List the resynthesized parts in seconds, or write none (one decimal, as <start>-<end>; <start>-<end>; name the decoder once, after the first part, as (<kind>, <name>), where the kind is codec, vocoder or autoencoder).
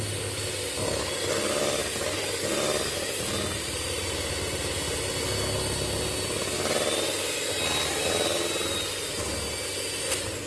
none